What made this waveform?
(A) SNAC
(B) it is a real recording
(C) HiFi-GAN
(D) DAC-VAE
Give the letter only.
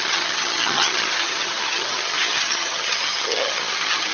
C